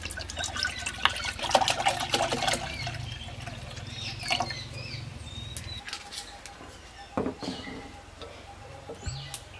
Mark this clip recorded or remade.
recorded